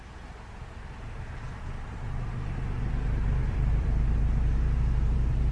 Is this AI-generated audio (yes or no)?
yes